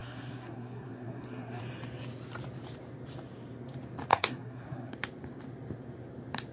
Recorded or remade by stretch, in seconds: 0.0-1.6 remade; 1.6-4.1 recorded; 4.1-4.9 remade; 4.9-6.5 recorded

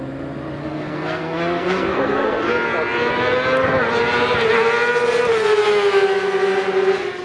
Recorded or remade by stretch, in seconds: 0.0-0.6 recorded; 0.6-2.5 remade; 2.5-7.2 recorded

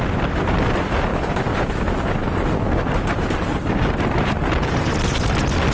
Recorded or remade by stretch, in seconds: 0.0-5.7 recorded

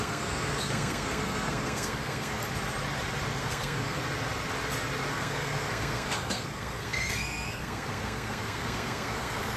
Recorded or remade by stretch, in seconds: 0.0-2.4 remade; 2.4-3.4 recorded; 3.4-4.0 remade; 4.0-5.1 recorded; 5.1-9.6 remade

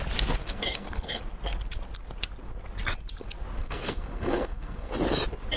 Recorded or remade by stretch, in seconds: 0.0-0.4 recorded; 0.4-1.2 remade; 1.2-3.6 recorded; 3.6-4.9 remade; 4.9-5.6 recorded